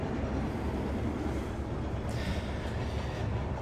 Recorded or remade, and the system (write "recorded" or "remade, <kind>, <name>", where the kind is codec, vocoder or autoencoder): recorded